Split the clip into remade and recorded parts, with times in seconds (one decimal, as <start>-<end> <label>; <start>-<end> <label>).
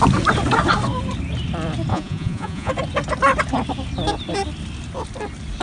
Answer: 0.0-1.9 recorded; 1.9-2.7 remade; 2.7-5.6 recorded